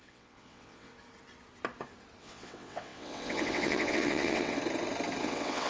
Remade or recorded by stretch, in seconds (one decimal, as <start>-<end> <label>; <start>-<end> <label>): 0.0-0.9 remade; 0.9-2.2 recorded; 2.2-4.6 remade; 4.6-5.2 recorded; 5.2-5.7 remade